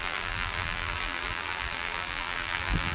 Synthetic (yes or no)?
yes